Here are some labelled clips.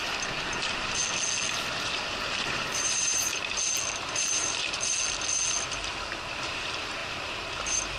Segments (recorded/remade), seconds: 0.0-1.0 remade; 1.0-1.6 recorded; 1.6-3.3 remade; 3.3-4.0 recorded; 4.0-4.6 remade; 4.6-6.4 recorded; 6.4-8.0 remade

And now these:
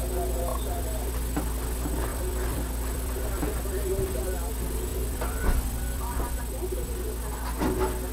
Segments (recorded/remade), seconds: 0.0-0.5 recorded; 0.5-1.1 remade; 1.1-2.1 recorded; 2.1-4.5 remade; 4.5-4.9 recorded; 4.9-6.4 remade; 6.4-8.1 recorded

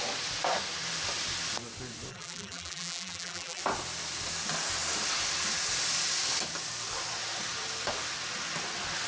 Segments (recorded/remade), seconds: 0.0-2.1 recorded; 2.1-3.6 remade; 3.6-9.1 recorded

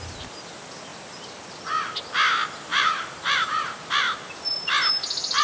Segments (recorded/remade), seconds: 0.0-2.7 recorded; 2.7-4.2 remade; 4.2-5.4 recorded

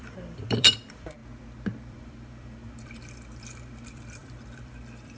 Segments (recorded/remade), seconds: 0.0-1.2 remade; 1.2-1.9 recorded; 1.9-5.2 remade